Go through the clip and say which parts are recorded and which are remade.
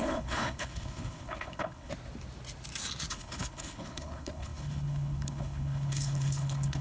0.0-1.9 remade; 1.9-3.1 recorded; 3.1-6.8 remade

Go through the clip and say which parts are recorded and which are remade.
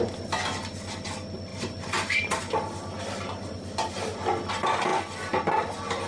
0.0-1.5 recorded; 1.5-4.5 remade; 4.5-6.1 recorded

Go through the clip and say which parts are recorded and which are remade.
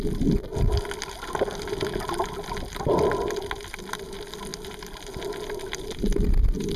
0.0-6.8 recorded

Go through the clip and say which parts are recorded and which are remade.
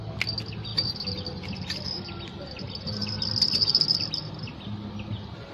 0.0-5.5 recorded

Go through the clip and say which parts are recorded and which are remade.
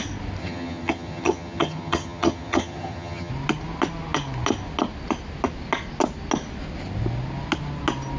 0.0-0.4 recorded; 0.4-3.3 remade; 3.3-8.2 recorded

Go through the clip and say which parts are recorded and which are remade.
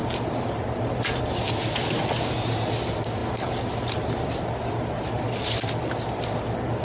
0.0-6.8 recorded